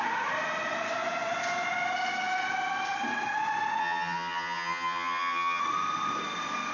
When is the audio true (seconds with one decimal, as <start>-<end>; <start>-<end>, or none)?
0.0-3.8; 5.6-6.7